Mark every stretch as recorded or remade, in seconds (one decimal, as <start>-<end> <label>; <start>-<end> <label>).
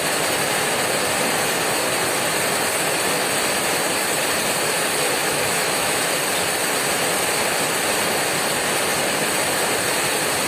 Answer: 0.0-5.2 recorded; 5.2-6.0 remade; 6.0-10.5 recorded